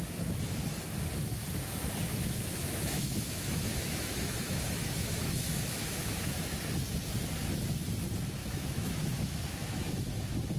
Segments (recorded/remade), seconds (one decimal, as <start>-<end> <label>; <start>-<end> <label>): 0.0-2.1 recorded; 2.1-6.6 remade; 6.6-8.4 recorded; 8.4-10.1 remade; 10.1-10.6 recorded